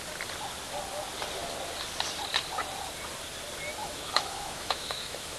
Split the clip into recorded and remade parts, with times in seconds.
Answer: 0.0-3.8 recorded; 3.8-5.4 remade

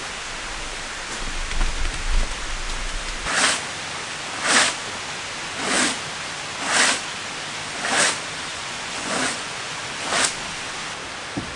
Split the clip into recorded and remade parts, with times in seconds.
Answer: 0.0-8.5 recorded; 8.5-9.8 remade; 9.8-11.6 recorded

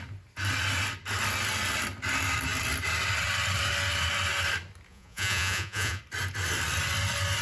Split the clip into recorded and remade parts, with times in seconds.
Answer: 0.0-4.9 recorded; 4.9-6.0 remade; 6.0-7.4 recorded

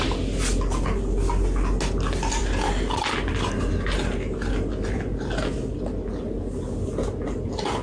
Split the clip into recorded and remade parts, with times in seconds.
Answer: 0.0-7.8 recorded

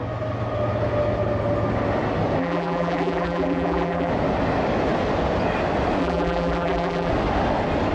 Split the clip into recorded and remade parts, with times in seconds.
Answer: 0.0-2.4 recorded; 2.4-4.1 remade; 4.1-6.0 recorded; 6.0-7.1 remade; 7.1-7.9 recorded

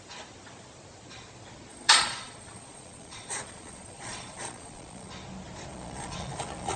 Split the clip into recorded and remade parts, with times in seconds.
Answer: 0.0-1.7 recorded; 1.7-5.1 remade; 5.1-5.7 recorded; 5.7-6.8 remade

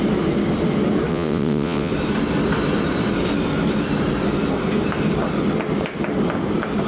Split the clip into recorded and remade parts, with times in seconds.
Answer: 0.0-1.1 recorded; 1.1-1.9 remade; 1.9-6.9 recorded